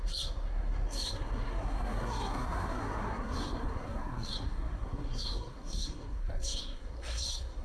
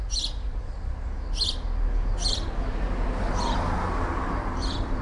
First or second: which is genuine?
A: second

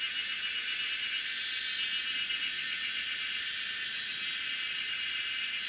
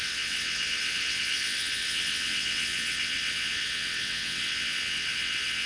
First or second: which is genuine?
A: first